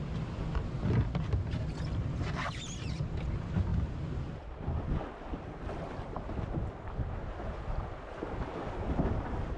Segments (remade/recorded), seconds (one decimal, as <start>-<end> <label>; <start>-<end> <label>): 0.0-9.6 recorded